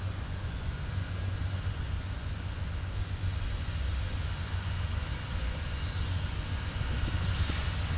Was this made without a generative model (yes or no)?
no